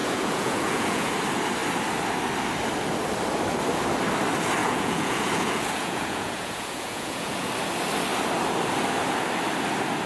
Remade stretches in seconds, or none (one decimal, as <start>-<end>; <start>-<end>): 0.0-1.1; 4.6-7.5